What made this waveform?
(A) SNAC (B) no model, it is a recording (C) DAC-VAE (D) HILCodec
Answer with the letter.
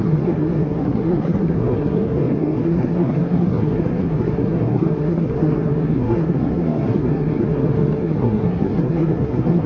A